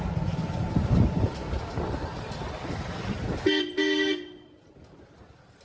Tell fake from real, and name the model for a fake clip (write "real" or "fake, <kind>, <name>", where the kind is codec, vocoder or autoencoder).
real